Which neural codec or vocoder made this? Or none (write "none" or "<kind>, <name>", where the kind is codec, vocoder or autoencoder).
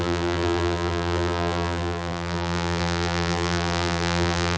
vocoder, BigVGAN v2